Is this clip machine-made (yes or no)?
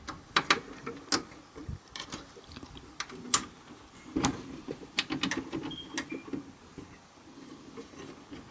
no